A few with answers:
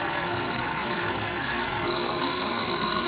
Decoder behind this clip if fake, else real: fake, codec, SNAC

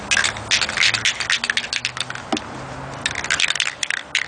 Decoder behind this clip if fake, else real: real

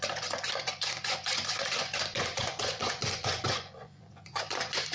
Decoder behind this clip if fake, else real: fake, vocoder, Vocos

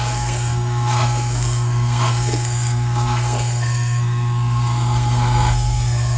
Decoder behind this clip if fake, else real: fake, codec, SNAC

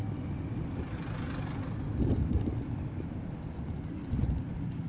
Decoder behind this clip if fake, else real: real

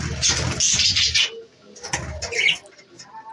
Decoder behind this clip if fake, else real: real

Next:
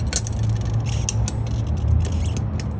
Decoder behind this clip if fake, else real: real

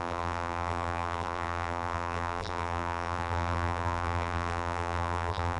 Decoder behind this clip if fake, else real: fake, vocoder, BigVGAN v2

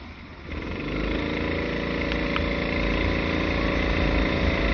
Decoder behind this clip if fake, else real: real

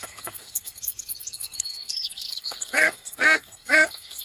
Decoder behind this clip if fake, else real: fake, codec, SNAC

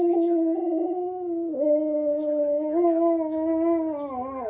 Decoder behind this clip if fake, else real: real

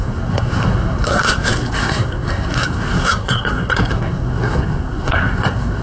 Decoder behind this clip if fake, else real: fake, codec, SNAC